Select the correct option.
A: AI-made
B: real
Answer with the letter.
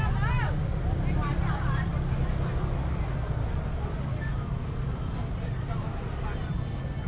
B